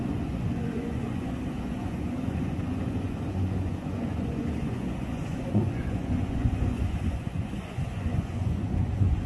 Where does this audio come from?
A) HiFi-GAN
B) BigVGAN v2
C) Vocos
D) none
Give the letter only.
C